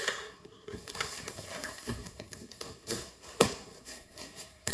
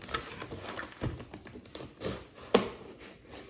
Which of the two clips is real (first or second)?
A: second